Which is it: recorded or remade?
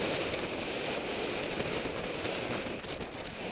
recorded